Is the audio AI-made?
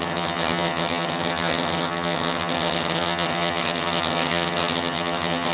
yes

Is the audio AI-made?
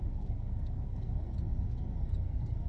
yes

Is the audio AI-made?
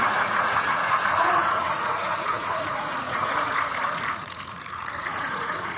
yes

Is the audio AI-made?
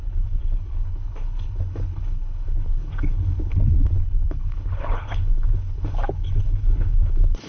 yes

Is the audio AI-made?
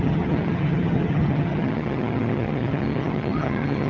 yes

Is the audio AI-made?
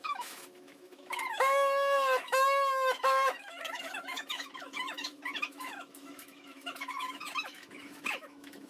yes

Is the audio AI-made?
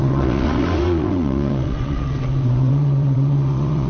yes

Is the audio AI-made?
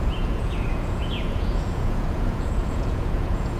yes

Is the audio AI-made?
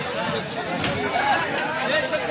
no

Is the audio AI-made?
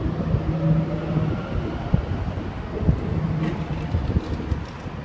no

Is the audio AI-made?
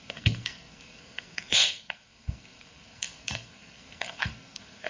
yes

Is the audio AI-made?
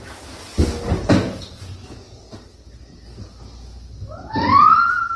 no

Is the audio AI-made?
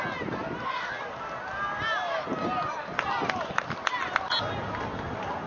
no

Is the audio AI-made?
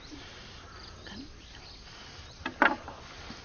no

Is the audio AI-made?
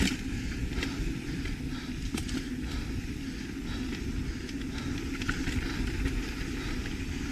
no